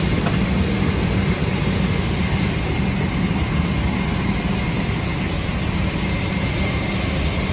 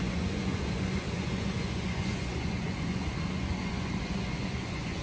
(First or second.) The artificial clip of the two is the second